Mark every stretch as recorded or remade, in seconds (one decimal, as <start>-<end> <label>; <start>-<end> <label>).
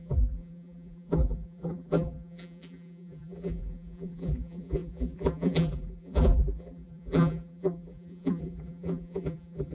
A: 0.0-9.7 remade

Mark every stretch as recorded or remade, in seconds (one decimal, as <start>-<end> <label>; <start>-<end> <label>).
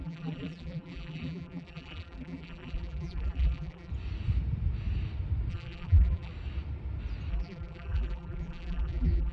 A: 0.0-3.9 remade; 3.9-5.5 recorded; 5.5-6.3 remade; 6.3-7.3 recorded; 7.3-9.3 remade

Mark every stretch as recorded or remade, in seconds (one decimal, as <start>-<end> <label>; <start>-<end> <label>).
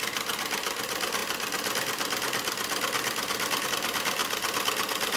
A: 0.0-5.2 recorded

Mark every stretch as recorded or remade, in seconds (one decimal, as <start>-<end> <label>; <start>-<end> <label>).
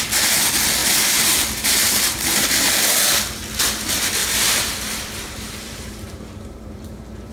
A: 0.0-0.8 recorded; 0.8-2.4 remade; 2.4-4.2 recorded; 4.2-7.3 remade